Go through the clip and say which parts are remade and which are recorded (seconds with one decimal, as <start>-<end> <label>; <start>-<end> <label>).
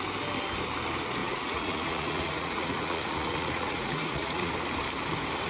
0.0-1.2 recorded; 1.2-4.5 remade; 4.5-5.5 recorded